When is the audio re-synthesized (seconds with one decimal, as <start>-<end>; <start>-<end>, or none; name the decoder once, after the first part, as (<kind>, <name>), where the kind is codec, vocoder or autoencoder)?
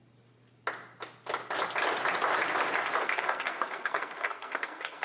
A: 3.0-5.0 (codec, SNAC)